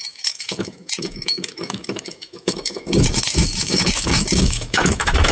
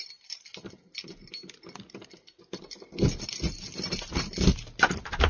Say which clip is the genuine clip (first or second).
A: second